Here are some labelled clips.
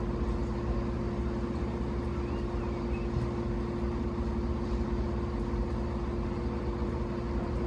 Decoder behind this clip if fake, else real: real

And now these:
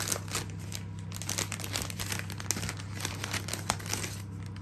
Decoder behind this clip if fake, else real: real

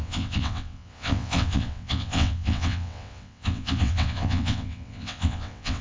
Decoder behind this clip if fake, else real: fake, vocoder, WaveNeXt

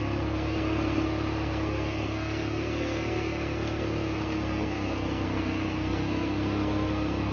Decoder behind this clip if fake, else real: fake, codec, SNAC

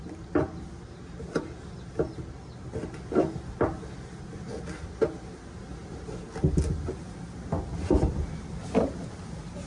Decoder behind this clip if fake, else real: real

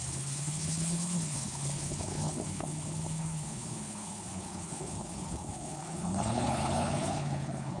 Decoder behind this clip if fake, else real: fake, codec, HILCodec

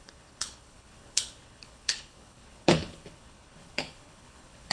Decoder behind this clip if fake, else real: fake, codec, HILCodec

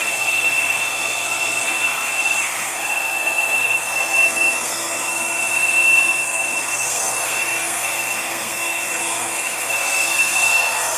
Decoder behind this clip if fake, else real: fake, codec, SNAC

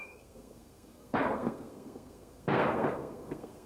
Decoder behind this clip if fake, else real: fake, codec, SNAC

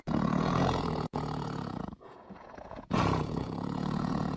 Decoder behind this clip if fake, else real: fake, vocoder, Vocos